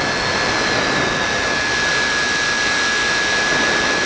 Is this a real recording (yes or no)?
yes